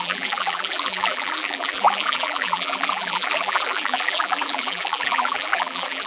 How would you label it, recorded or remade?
remade